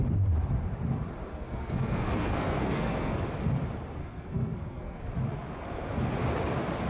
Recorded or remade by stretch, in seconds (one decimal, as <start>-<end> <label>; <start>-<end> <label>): 0.0-1.3 recorded; 1.3-3.2 remade; 3.2-4.0 recorded; 4.0-5.0 remade; 5.0-6.9 recorded